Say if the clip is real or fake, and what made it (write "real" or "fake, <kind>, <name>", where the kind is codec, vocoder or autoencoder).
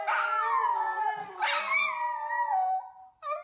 real